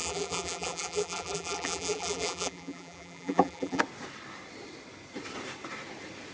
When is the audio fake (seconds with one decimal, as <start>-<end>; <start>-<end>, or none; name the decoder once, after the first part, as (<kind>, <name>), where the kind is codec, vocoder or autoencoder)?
0.0-3.8 (vocoder, BigVGAN v2)